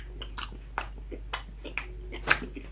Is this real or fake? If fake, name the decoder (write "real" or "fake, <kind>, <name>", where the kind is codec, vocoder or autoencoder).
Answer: real